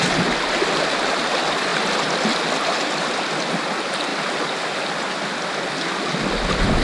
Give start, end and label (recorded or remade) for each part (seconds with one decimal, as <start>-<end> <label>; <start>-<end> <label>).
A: 0.0-6.8 recorded